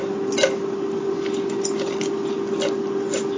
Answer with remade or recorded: recorded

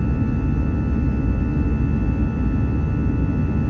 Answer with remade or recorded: recorded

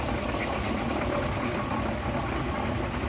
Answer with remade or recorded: recorded